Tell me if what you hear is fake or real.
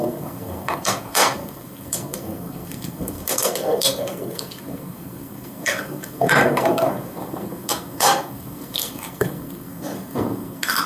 fake